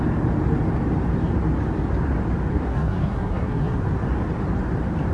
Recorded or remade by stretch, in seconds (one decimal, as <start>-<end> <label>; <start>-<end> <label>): 0.0-2.5 recorded; 2.5-3.8 remade; 3.8-5.1 recorded